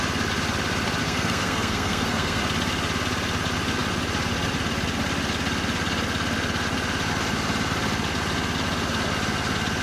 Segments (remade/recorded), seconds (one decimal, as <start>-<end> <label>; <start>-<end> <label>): 0.0-1.0 recorded; 1.0-2.4 remade; 2.4-9.8 recorded